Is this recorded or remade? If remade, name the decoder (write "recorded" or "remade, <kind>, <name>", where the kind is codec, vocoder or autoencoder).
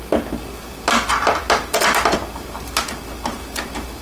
recorded